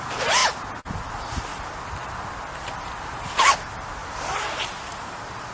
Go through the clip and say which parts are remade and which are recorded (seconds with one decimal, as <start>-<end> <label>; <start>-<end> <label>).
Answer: 0.0-4.0 recorded; 4.0-4.7 remade; 4.7-5.5 recorded